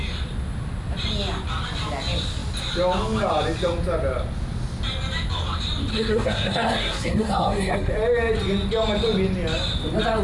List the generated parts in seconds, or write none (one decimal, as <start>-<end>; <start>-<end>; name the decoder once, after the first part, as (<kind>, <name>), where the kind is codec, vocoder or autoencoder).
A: 5.9-7.9 (codec, SNAC)